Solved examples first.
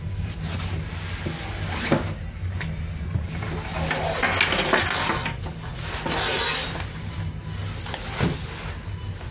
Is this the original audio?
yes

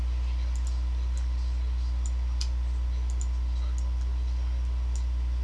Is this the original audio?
yes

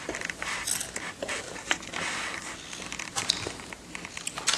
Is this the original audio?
yes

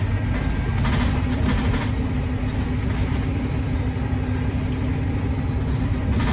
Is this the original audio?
yes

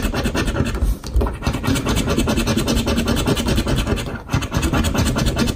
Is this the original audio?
yes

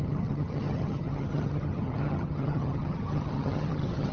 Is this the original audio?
no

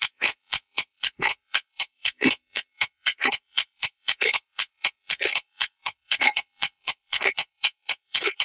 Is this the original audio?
no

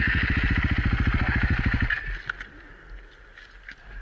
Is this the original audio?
yes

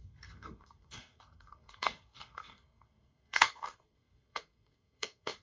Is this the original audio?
no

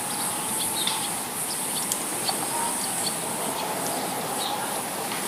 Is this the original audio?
yes